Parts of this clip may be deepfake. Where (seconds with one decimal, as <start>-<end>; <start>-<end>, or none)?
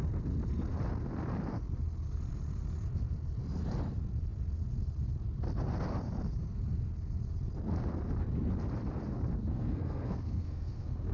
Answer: 9.5-11.1